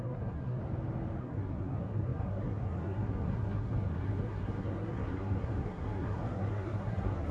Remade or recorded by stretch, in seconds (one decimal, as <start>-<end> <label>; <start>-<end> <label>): 0.0-0.6 remade; 0.6-1.2 recorded; 1.2-7.3 remade